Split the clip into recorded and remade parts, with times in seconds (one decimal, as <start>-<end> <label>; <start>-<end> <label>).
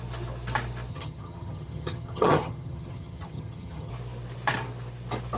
0.0-0.9 recorded; 0.9-3.9 remade; 3.9-5.4 recorded